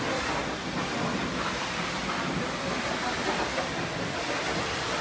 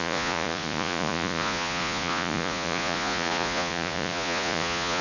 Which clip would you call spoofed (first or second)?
second